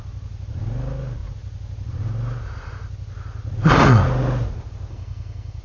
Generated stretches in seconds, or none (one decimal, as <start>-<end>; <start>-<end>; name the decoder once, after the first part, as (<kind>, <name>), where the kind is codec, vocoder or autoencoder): 4.9-5.6 (codec, SNAC)